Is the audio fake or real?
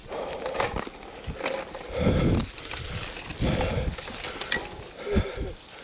real